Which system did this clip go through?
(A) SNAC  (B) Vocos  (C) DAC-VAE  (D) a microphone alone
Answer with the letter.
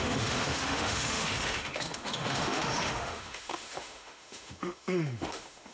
C